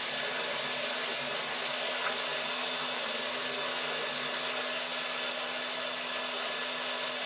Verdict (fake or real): real